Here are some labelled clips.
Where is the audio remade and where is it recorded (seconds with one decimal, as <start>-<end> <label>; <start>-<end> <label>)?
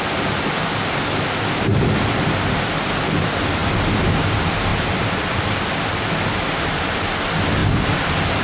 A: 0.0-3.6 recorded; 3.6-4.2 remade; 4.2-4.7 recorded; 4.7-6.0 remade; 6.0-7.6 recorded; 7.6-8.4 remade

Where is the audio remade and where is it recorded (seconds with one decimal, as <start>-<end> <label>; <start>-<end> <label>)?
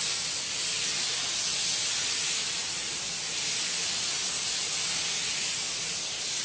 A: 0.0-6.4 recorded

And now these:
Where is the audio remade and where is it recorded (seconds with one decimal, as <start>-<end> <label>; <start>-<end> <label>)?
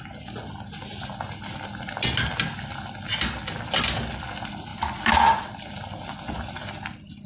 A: 0.0-7.3 recorded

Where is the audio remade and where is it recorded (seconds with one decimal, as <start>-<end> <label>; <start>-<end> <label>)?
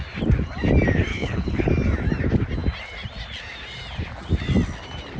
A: 0.0-1.1 recorded; 1.1-1.7 remade; 1.7-5.2 recorded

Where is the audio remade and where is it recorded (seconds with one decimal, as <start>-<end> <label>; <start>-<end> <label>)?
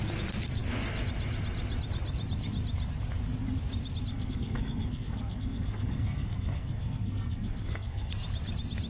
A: 0.0-4.1 recorded; 4.1-8.1 remade; 8.1-8.9 recorded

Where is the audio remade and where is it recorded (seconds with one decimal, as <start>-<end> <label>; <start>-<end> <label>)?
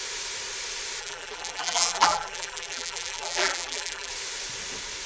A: 0.0-1.0 recorded; 1.0-4.1 remade; 4.1-5.1 recorded